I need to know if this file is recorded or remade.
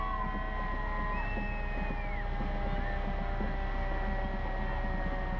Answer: recorded